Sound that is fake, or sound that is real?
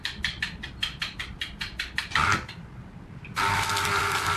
real